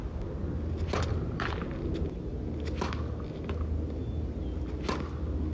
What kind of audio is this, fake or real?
real